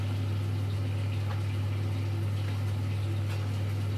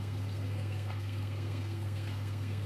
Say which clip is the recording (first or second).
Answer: first